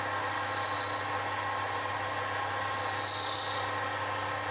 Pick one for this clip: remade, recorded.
recorded